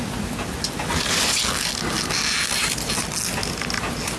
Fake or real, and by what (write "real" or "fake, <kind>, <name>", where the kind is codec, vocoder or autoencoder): real